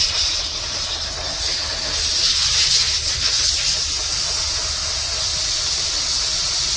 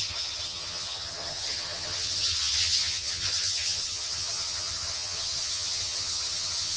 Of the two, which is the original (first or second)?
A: first